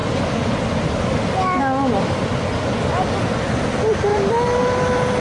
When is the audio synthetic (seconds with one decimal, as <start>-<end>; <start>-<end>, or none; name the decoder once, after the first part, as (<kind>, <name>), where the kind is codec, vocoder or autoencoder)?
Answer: 4.1-5.2 (vocoder, BigVGAN v2)